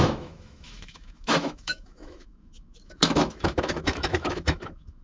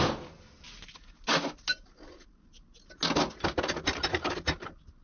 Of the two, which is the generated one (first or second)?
first